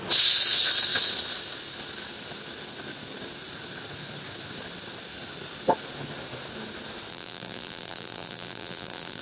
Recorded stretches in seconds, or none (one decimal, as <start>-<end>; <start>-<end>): 0.0-7.1

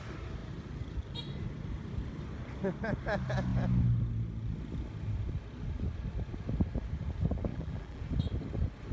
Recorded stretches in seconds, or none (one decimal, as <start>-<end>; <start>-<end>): 0.0-7.5; 8.0-8.9

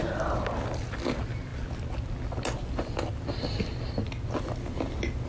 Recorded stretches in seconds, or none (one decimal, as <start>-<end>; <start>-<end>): 0.0-5.3

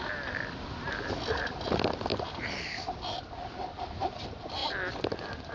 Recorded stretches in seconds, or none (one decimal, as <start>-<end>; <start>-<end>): 0.0-5.5

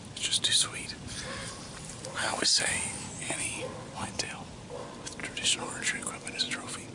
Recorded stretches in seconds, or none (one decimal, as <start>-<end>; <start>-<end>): 0.0-1.4; 2.7-5.2; 6.4-6.9

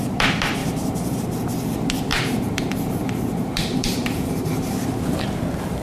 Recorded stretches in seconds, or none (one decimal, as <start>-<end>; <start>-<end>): 0.0-0.6; 1.2-2.1; 5.2-5.8

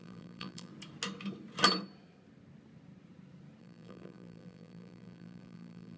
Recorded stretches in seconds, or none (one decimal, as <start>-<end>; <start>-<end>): 0.7-3.6